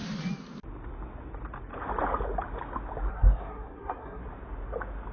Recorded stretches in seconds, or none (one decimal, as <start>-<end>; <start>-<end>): 0.0-3.1; 4.2-5.1